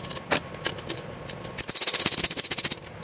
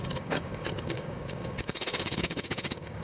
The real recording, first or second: first